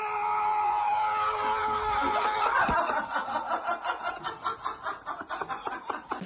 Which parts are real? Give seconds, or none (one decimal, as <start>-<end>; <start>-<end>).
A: 0.0-6.3